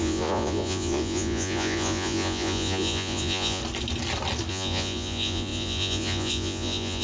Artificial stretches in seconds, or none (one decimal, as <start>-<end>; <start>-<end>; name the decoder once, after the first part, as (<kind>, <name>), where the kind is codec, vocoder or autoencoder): 0.0-3.6 (vocoder, Vocos); 4.5-7.0